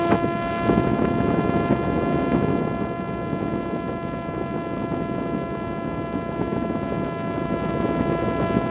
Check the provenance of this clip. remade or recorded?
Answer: recorded